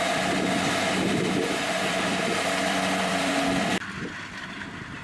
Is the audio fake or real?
fake